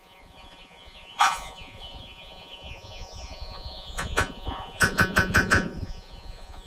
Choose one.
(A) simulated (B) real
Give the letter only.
A